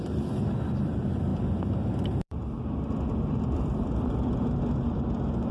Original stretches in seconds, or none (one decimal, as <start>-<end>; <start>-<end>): 0.0-1.3; 4.6-5.5